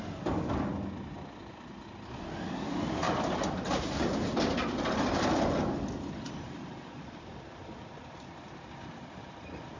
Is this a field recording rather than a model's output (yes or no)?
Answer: yes